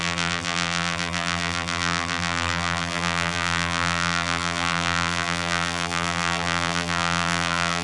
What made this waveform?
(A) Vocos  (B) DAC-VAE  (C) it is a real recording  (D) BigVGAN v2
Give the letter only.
D